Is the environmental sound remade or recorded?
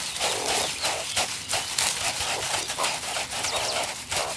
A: recorded